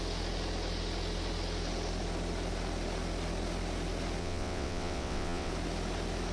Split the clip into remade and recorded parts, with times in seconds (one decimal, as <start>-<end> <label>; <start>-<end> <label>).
0.0-4.2 recorded; 4.2-5.5 remade; 5.5-6.3 recorded